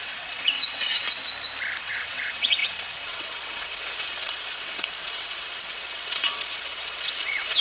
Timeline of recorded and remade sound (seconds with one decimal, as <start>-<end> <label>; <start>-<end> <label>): 0.0-1.2 remade; 1.2-1.8 recorded; 1.8-7.6 remade